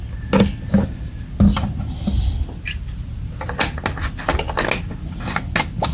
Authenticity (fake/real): real